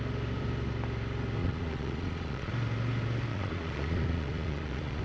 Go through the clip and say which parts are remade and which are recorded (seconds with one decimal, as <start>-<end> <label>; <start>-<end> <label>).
0.0-1.4 recorded; 1.4-2.5 remade; 2.5-3.3 recorded; 3.3-5.0 remade